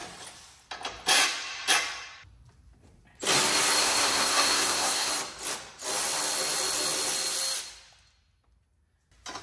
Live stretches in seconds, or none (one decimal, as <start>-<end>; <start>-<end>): 0.0-3.8; 5.1-9.4